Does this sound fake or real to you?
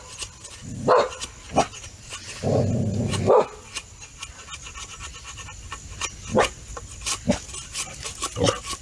real